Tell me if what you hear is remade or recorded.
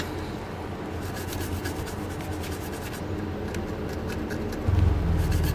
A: recorded